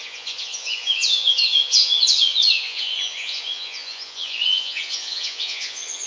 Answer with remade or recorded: remade